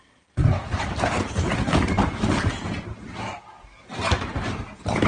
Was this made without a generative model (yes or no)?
yes